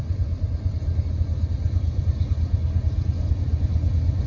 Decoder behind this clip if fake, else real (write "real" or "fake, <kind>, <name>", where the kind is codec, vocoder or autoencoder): real